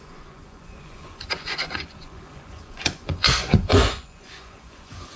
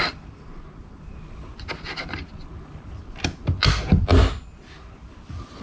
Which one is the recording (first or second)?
second